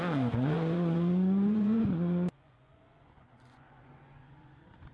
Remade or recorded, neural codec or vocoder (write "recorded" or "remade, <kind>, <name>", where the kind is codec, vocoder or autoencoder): remade, vocoder, Vocos